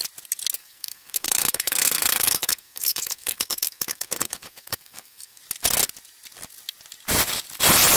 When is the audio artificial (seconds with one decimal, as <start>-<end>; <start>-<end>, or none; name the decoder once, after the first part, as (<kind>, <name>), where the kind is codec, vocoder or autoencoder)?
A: 0.6-5.4 (codec, SNAC)